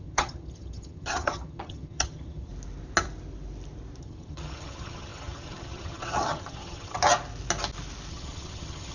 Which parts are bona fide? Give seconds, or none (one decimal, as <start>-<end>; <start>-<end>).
2.5-4.0; 7.0-8.1